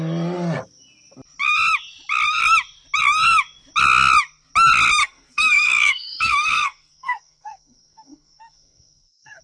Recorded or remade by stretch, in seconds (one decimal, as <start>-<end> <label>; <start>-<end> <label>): 0.0-5.0 recorded; 5.0-9.4 remade